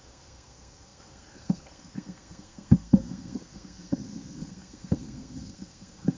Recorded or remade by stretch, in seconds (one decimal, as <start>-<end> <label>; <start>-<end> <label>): 0.0-6.2 remade